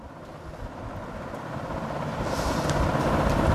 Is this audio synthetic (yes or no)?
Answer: no